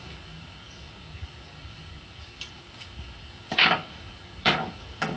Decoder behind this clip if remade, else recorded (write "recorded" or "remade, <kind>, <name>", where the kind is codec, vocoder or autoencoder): remade, codec, DAC